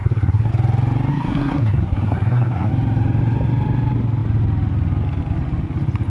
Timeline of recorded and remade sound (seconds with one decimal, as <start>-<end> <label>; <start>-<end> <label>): 0.0-0.5 remade; 0.5-1.1 recorded; 1.1-2.7 remade; 2.7-6.1 recorded